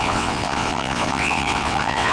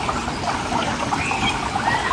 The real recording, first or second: second